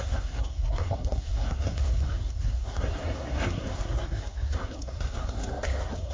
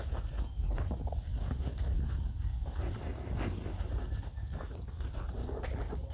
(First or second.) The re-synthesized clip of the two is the first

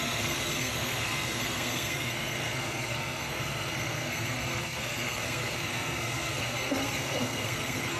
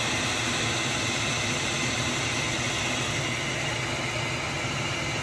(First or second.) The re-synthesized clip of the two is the first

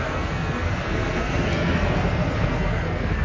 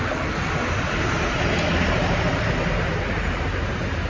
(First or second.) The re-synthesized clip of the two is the first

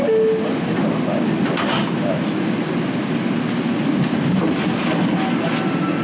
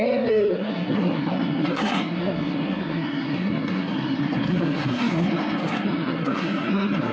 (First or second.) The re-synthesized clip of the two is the second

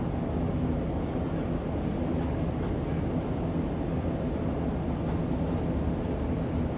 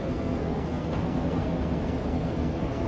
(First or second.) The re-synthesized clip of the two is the second